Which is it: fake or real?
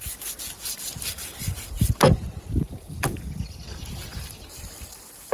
real